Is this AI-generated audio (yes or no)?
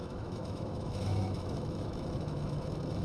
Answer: yes